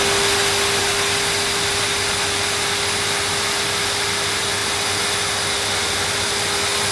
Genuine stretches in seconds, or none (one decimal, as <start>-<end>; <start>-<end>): 0.0-6.9